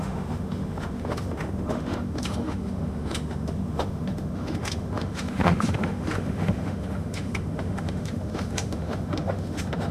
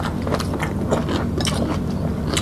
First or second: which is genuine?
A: second